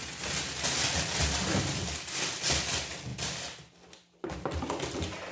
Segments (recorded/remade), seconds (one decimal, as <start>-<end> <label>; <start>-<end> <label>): 0.0-5.3 recorded